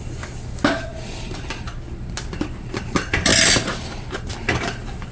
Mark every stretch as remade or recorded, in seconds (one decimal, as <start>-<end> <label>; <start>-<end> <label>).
0.0-5.1 recorded